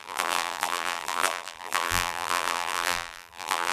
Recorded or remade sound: remade